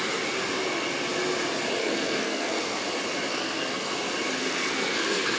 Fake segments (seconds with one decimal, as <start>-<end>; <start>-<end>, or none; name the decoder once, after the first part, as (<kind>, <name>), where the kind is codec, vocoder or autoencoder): 1.8-2.8 (codec, SNAC); 3.3-3.9; 4.4-5.4